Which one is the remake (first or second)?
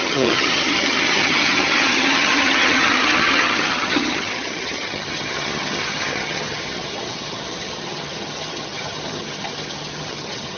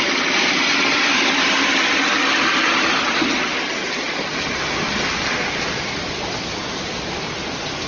first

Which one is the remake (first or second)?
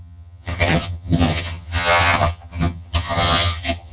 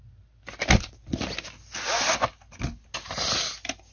first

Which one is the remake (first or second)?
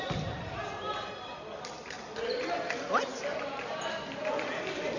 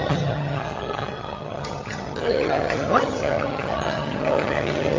second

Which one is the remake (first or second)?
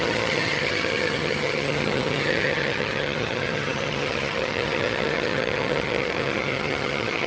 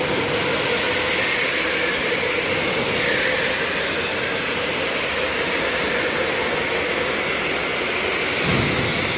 first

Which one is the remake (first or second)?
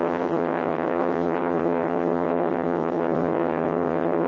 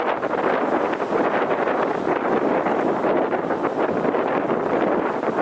first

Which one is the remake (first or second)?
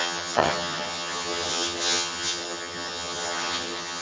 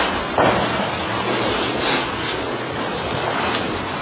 first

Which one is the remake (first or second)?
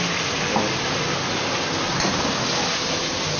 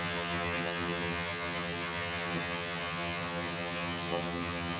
second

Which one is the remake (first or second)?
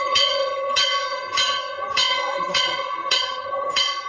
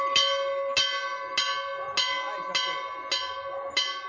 first